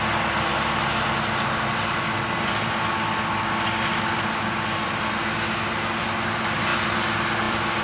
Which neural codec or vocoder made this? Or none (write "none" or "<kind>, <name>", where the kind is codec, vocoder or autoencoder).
none